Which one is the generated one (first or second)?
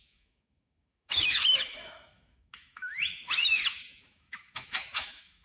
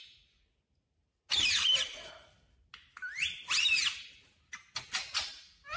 first